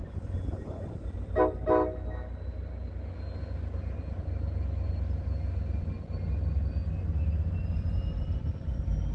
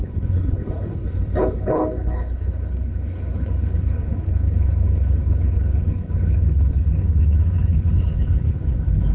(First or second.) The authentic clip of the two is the first